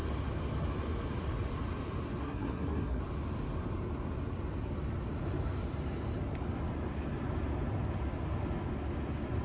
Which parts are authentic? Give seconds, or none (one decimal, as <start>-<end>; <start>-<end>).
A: 0.0-2.2; 3.0-9.4